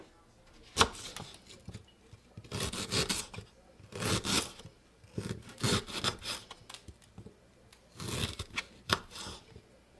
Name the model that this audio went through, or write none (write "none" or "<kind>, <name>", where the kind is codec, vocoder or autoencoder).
none